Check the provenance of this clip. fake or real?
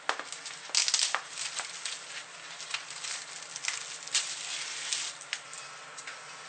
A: real